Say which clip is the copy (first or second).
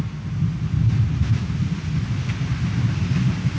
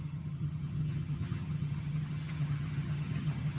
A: second